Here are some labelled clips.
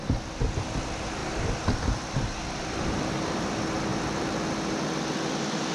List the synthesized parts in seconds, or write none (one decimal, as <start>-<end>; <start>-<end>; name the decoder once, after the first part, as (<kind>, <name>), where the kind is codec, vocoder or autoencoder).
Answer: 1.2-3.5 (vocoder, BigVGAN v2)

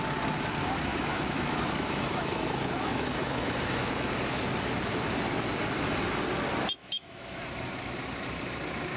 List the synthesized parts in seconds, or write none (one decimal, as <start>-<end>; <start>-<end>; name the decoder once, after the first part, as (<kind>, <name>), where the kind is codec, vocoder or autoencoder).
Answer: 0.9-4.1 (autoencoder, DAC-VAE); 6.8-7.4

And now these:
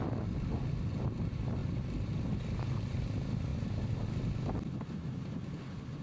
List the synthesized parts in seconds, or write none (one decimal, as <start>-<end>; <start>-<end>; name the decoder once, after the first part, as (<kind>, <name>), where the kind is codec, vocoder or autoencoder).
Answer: none

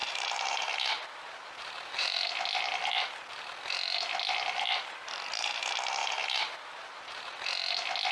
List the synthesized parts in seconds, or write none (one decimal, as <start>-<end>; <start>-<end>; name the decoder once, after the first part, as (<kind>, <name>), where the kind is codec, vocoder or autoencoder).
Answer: 0.0-2.3 (vocoder, BigVGAN v2); 6.0-7.3

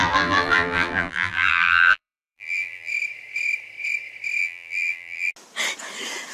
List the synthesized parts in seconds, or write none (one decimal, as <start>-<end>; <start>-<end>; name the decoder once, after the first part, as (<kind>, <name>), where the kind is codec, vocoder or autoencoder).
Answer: 0.0-2.9 (vocoder, BigVGAN v2); 4.4-5.3

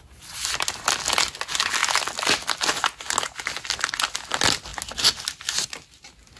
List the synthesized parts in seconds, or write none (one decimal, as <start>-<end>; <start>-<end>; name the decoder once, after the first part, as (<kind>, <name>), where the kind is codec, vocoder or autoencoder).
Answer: none